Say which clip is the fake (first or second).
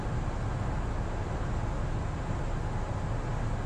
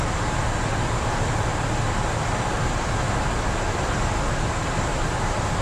second